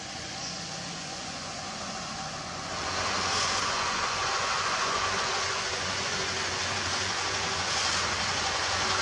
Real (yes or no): no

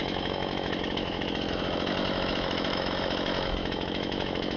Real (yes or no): no